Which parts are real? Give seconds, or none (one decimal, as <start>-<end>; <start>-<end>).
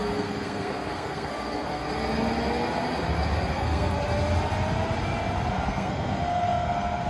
1.8-3.5; 3.9-5.5